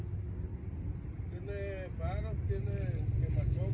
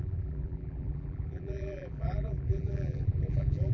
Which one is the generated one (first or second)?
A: second